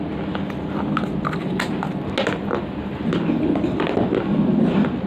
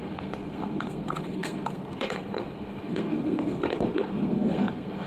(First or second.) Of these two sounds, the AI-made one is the second